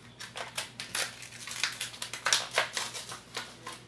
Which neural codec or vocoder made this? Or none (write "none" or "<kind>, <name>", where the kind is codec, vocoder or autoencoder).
none